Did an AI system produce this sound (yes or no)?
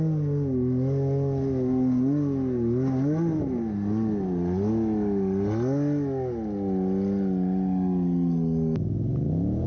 no